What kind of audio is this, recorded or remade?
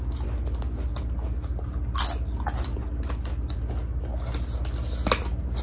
recorded